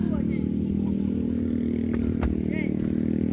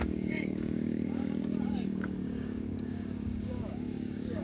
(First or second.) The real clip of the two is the first